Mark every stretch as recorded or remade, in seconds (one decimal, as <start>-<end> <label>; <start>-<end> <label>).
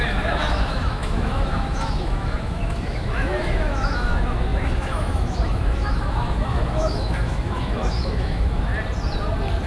0.0-8.7 remade; 8.7-9.7 recorded